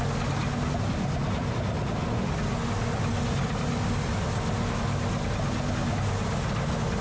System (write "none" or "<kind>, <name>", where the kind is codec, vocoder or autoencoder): none